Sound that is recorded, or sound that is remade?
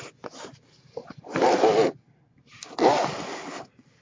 recorded